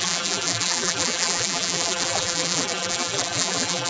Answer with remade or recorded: remade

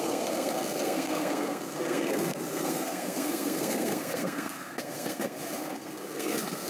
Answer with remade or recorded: remade